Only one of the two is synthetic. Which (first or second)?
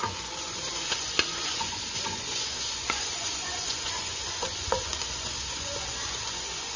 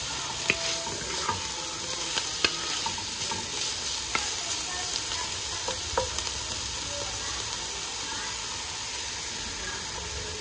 first